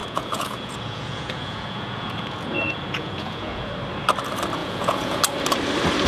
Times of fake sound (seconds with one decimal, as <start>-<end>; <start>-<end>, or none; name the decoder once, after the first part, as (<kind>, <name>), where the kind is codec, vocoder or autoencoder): 0.0-3.7 (vocoder, Vocos); 4.6-5.2